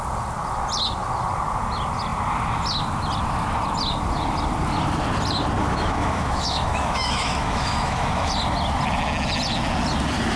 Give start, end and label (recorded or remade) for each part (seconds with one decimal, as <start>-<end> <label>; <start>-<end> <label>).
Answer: 0.0-5.6 recorded; 5.6-8.3 remade; 8.3-10.4 recorded